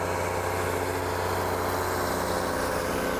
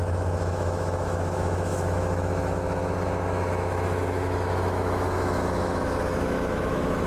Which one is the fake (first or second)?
second